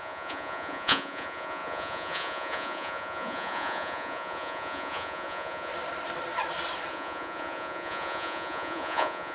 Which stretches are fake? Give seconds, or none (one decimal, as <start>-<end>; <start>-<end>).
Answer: 0.0-5.7; 6.9-9.3